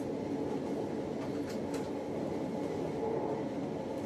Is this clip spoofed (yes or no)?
no